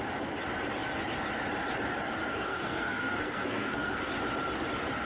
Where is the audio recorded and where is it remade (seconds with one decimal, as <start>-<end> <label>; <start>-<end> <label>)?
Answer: 0.0-2.2 recorded; 2.2-4.1 remade; 4.1-5.0 recorded